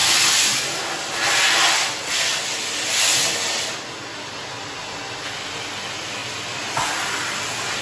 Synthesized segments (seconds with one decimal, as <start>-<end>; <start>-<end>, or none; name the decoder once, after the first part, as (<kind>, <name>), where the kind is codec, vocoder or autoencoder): none